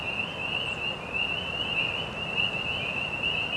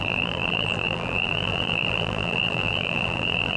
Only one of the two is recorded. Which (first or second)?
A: first